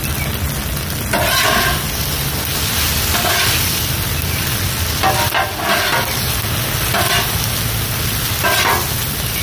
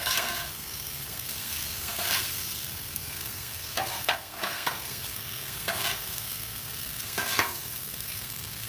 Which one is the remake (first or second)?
second